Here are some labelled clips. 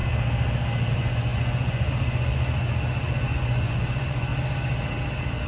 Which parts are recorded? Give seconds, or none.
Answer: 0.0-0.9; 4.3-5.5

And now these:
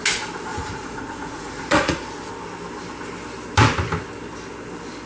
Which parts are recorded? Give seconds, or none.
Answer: 0.0-0.5; 2.1-5.1